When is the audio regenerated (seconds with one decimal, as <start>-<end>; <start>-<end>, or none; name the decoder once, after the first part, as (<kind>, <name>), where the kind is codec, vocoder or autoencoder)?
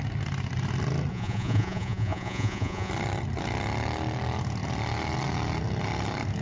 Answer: 1.1-2.9 (vocoder, Vocos)